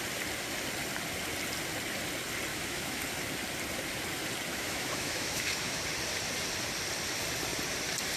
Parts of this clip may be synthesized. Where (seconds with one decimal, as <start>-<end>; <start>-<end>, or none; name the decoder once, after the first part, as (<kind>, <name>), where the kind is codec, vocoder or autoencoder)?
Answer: 2.5-3.0 (autoencoder, DAC-VAE); 4.5-5.8